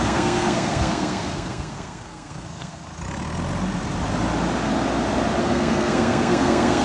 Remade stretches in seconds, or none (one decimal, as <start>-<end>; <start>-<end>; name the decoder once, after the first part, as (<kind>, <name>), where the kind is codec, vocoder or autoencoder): 0.0-2.9 (codec, SNAC); 5.4-6.8